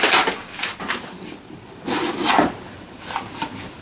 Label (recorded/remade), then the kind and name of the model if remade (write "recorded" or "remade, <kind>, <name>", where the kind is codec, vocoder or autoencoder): recorded